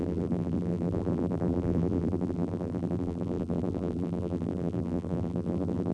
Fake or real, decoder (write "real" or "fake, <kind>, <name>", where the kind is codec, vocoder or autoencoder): fake, vocoder, BigVGAN v2